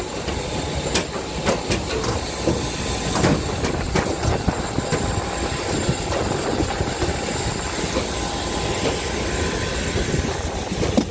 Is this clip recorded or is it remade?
recorded